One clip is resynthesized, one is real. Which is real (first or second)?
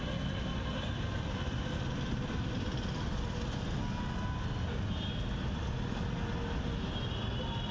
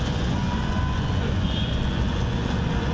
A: first